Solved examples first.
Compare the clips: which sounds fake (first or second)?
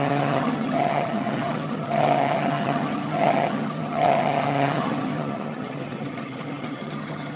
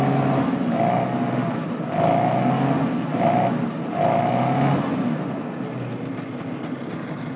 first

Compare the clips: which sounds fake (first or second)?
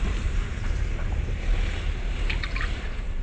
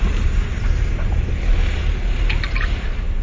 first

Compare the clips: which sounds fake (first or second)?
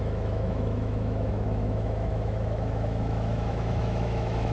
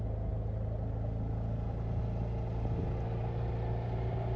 first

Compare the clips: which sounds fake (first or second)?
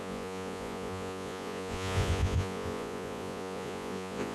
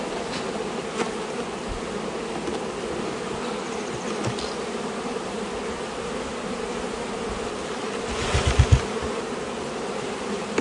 first